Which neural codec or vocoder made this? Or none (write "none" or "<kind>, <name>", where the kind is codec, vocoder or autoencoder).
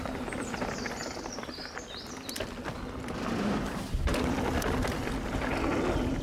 none